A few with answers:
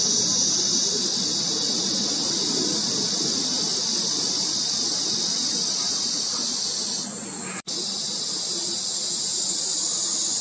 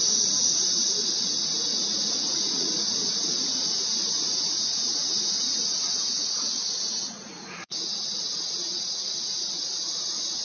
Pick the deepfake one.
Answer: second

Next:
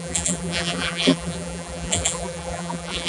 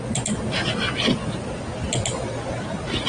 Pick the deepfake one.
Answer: first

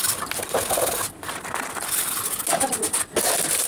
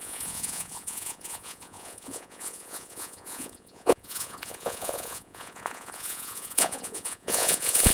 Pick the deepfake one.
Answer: second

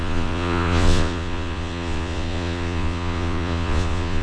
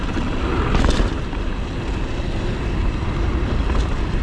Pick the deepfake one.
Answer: first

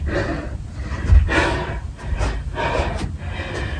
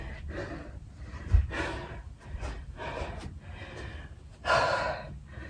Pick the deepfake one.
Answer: second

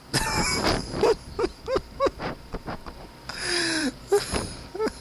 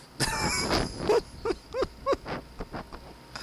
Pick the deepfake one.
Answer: first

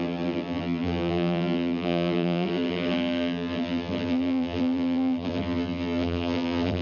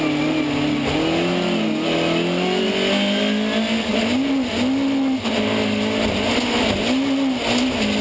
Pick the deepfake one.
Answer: first